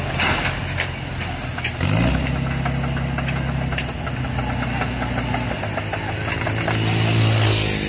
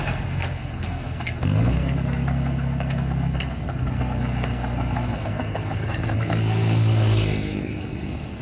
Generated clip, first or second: second